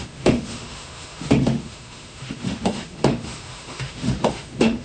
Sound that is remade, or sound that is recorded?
remade